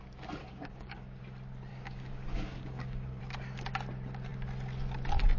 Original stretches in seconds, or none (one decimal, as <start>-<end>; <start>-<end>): 0.0-0.4; 1.2-1.7; 3.2-5.4